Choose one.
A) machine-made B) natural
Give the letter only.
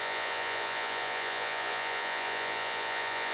A